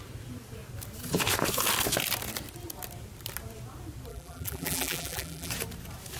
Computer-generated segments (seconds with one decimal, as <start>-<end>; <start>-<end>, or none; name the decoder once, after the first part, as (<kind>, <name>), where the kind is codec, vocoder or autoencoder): 4.1-5.5 (vocoder, BigVGAN v2)